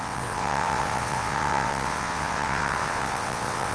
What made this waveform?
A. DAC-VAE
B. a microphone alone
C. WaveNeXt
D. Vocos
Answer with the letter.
C